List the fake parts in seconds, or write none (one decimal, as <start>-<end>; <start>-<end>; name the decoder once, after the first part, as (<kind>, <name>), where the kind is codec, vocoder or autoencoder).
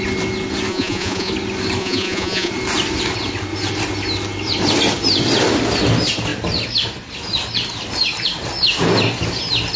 0.7-1.3 (vocoder, Vocos); 1.8-2.5